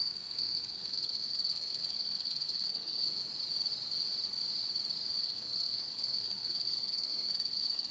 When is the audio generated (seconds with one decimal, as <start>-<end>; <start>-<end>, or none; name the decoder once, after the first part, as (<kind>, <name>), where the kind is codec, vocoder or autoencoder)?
0.0-3.2 (codec, SNAC); 5.2-7.9